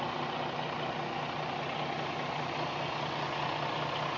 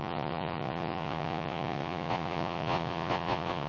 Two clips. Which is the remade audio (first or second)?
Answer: second